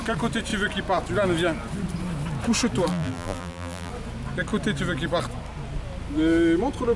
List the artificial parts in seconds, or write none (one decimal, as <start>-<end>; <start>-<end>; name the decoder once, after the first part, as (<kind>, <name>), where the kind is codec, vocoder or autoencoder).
2.9-3.9 (vocoder, BigVGAN v2)